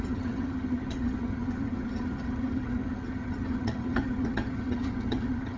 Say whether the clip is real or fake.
fake